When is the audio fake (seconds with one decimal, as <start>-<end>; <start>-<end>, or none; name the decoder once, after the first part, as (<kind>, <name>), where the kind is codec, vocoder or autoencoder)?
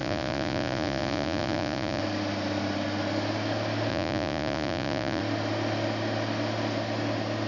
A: 0.0-2.0 (vocoder, Vocos); 3.9-5.2